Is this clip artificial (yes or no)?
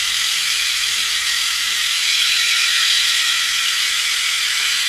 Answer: yes